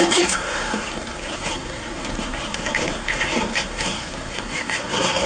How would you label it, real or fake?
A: fake